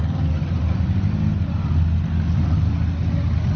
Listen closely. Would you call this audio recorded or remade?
recorded